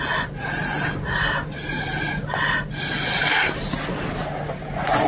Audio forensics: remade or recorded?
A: recorded